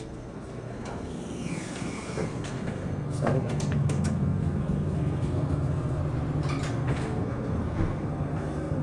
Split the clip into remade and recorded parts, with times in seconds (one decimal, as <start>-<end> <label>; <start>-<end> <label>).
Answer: 0.0-6.0 remade; 6.0-6.7 recorded; 6.7-8.8 remade